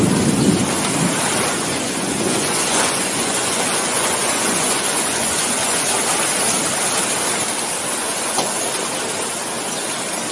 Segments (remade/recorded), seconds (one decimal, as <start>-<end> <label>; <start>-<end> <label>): 0.0-1.5 recorded; 1.5-6.1 remade; 6.1-8.0 recorded; 8.0-8.5 remade; 8.5-10.3 recorded

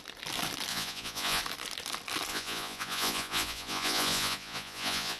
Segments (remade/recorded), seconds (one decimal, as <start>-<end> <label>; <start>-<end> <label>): 0.0-0.7 recorded; 0.7-1.4 remade; 1.4-2.3 recorded; 2.3-5.2 remade

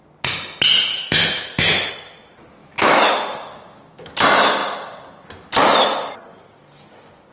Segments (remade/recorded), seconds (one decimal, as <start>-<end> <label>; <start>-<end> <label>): 0.0-0.9 recorded; 0.9-1.9 remade; 1.9-2.6 recorded; 2.6-4.1 remade; 4.1-7.3 recorded

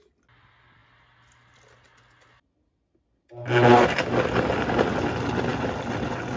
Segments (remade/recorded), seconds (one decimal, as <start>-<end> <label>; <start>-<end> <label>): 0.0-6.4 recorded

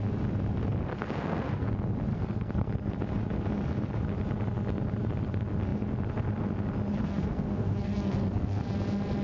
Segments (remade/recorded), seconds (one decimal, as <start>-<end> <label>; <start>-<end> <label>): 0.0-0.9 recorded; 0.9-1.7 remade; 1.7-2.1 recorded; 2.1-2.7 remade; 2.7-6.9 recorded; 6.9-8.6 remade; 8.6-9.2 recorded

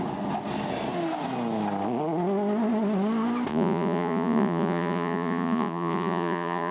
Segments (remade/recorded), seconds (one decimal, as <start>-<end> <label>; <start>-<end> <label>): 0.0-3.5 recorded; 3.5-6.7 remade